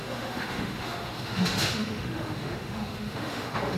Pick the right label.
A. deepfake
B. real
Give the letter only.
A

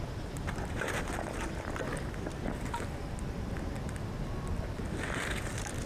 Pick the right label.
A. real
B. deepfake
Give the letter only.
A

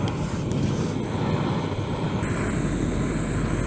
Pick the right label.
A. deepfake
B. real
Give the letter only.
B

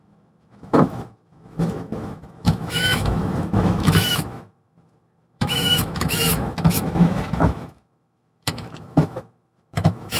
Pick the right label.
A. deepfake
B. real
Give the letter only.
A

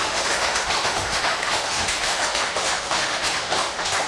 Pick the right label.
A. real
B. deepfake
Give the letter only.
B